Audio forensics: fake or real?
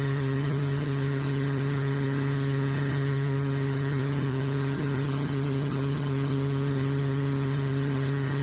fake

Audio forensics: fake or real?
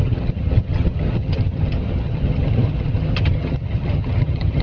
fake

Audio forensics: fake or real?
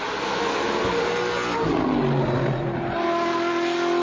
real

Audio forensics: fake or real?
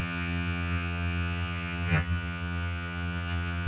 fake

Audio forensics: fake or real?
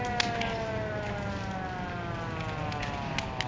real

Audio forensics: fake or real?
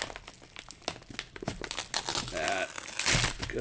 real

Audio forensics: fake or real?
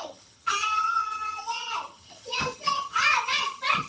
fake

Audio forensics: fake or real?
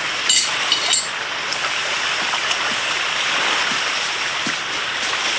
real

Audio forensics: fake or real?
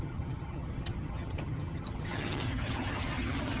fake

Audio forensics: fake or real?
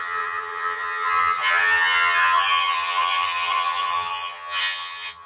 fake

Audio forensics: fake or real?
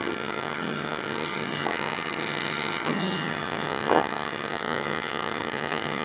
fake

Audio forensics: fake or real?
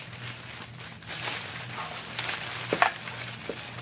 real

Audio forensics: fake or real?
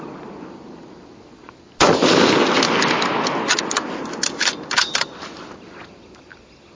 real